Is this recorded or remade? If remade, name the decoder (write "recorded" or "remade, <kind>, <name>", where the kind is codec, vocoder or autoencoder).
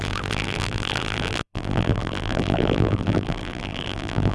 remade, vocoder, BigVGAN v2